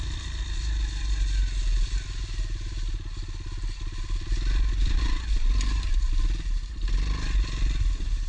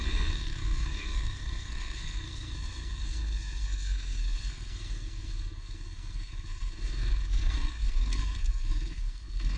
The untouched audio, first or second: first